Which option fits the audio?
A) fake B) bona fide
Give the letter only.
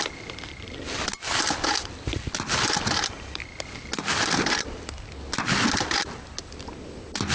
B